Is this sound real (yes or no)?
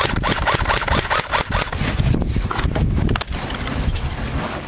no